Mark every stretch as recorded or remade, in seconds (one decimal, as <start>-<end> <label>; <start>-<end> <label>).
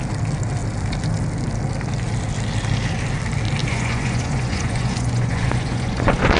0.0-3.6 recorded; 3.6-6.4 remade